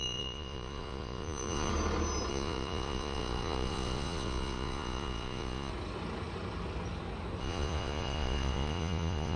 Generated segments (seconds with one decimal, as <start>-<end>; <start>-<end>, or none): 0.0-1.7; 2.3-5.7; 7.4-9.4